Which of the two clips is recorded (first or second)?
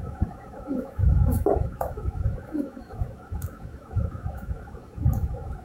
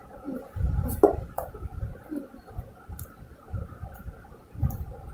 second